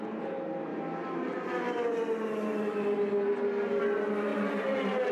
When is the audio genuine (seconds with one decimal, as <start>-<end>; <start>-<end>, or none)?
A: 0.0-4.3